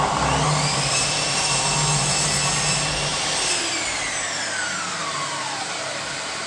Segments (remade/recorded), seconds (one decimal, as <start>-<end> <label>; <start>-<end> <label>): 0.0-6.5 recorded